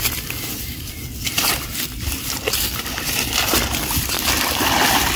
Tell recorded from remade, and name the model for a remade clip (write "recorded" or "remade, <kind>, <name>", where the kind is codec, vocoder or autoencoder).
remade, vocoder, BigVGAN v2